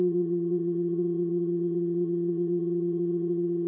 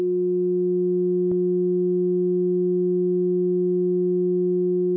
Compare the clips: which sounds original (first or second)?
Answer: second